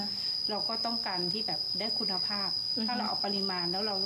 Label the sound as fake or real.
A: real